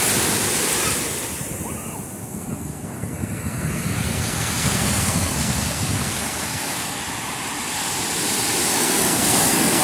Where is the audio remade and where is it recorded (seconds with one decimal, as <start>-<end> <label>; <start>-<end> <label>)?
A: 0.0-2.2 recorded; 2.2-7.0 remade; 7.0-8.7 recorded; 8.7-9.8 remade

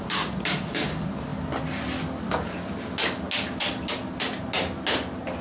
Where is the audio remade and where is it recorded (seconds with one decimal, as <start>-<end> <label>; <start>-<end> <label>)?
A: 0.0-5.4 recorded

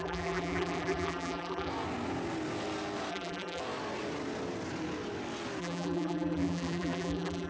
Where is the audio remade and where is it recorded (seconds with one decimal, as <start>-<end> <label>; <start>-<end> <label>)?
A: 0.0-1.7 remade; 1.7-3.1 recorded; 3.1-3.6 remade; 3.6-5.6 recorded; 5.6-7.5 remade

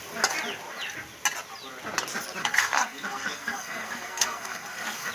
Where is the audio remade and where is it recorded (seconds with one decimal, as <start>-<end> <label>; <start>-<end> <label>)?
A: 0.0-2.4 recorded; 2.4-5.1 remade

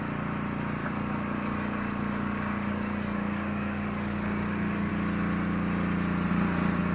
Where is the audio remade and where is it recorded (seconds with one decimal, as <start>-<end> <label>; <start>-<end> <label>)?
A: 0.0-0.8 recorded; 0.8-4.9 remade; 4.9-6.9 recorded

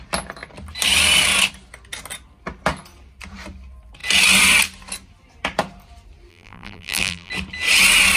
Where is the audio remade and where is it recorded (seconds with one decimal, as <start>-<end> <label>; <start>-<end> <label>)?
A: 0.0-6.3 recorded; 6.3-7.3 remade; 7.3-8.2 recorded

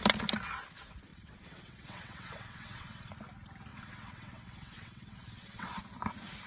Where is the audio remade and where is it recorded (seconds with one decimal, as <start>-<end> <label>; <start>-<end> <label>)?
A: 0.0-1.1 recorded; 1.1-3.1 remade; 3.1-3.7 recorded; 3.7-5.8 remade; 5.8-6.5 recorded

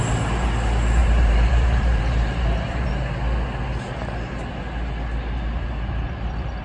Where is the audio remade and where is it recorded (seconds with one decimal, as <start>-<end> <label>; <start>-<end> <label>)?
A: 0.0-1.0 recorded; 1.0-2.9 remade; 2.9-6.6 recorded